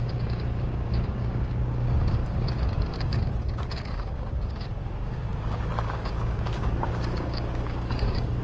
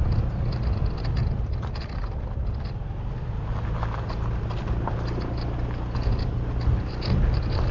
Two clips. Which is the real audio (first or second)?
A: second